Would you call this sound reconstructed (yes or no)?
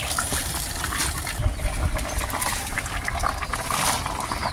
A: no